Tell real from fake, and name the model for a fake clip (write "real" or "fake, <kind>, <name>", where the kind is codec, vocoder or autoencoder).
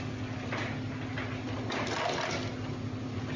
real